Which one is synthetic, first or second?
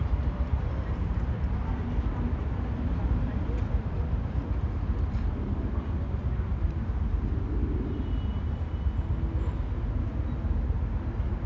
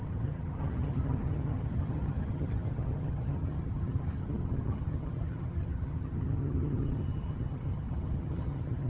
second